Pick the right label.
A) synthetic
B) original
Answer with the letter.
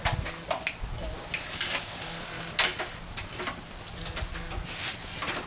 B